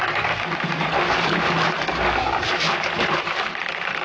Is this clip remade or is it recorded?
remade